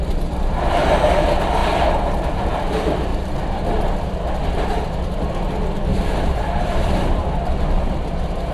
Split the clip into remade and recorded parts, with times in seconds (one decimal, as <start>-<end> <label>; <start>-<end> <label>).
0.0-3.1 recorded; 3.1-3.8 remade; 3.8-5.9 recorded; 5.9-7.3 remade; 7.3-8.5 recorded